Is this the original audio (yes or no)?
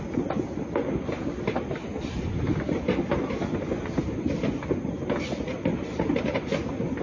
yes